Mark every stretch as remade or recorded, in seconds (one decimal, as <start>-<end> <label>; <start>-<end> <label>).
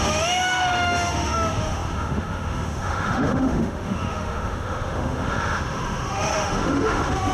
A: 0.0-7.3 remade